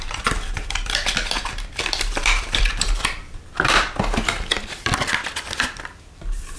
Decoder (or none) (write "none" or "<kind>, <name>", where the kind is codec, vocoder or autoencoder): vocoder, BigVGAN v2